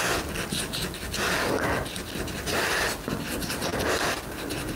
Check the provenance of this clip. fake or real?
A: real